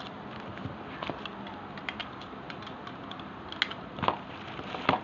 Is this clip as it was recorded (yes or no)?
yes